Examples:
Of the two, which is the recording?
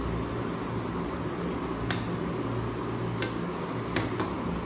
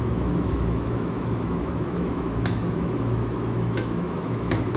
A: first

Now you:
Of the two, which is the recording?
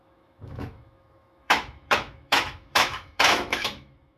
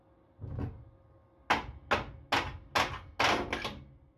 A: second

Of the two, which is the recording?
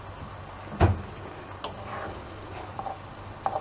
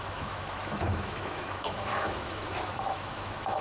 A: first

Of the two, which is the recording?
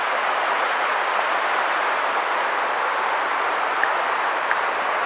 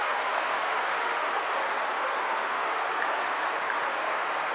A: first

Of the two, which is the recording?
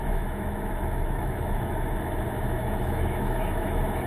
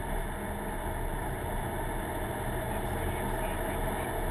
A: second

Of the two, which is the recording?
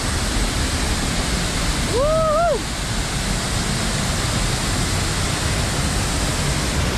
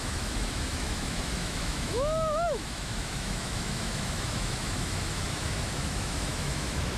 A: first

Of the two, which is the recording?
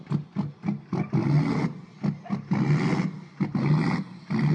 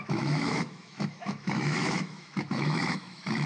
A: first